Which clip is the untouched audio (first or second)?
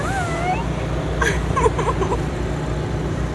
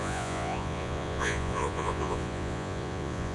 first